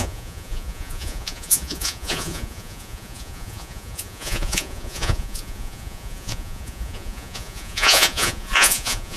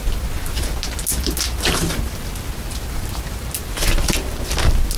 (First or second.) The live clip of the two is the second